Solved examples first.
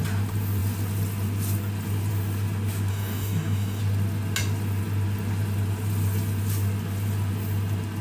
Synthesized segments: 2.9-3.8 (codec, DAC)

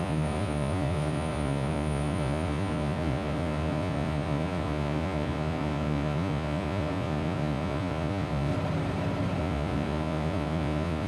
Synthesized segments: 0.0-8.5 (vocoder, Vocos); 9.4-11.1

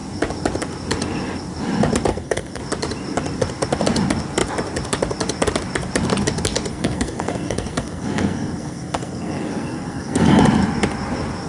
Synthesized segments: 2.1-2.6 (codec, SNAC); 6.7-10.4

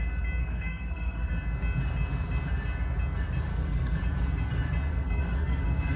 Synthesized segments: 0.4-1.3 (codec, SNAC); 3.5-4.0; 4.9-6.0

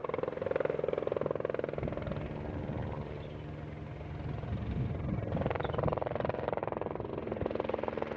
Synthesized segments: none

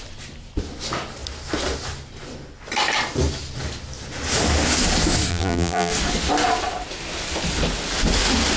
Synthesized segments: 5.3-5.9 (vocoder, BigVGAN v2)

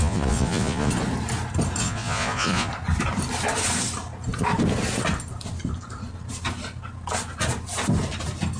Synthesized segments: 0.0-0.9 (vocoder, Vocos); 1.8-2.7